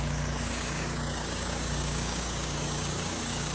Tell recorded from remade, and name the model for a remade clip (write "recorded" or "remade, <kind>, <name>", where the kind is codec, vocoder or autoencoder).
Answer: remade, codec, DAC